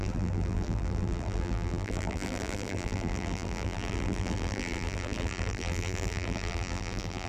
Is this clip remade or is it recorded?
remade